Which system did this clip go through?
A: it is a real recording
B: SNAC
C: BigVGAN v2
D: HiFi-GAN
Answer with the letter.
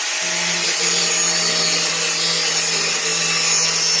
A